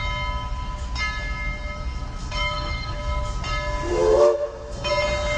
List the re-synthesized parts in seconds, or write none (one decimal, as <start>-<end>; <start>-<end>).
2.2-3.0; 3.9-4.9